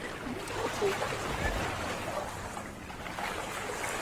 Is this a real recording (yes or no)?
yes